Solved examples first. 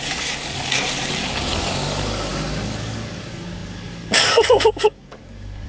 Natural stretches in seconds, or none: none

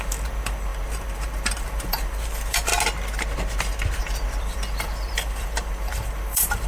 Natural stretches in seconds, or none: 2.7-4.4